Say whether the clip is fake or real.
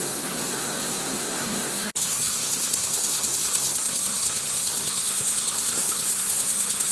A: fake